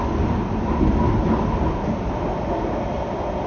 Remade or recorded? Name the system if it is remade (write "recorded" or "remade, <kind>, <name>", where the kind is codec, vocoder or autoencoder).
recorded